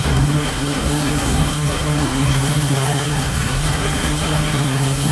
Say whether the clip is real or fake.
fake